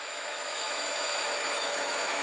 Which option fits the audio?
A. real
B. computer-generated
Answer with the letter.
B